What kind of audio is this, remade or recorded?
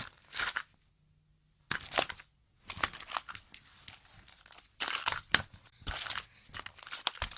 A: recorded